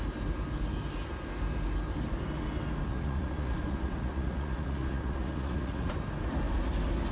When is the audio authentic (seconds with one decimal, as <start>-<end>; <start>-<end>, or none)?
0.0-2.9; 5.9-7.1